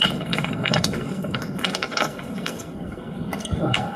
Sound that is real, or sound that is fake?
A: fake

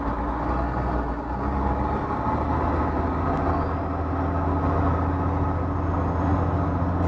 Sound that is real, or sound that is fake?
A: real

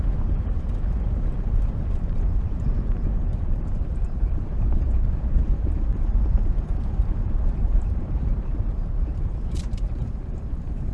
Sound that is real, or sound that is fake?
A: fake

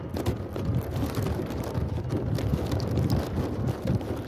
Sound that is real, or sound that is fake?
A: real